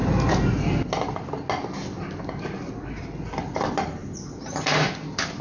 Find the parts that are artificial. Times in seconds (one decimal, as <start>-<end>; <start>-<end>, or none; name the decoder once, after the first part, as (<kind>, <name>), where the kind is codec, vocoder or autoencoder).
4.0-4.9 (vocoder, BigVGAN v2)